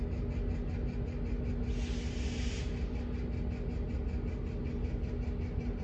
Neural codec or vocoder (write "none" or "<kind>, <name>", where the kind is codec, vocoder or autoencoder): none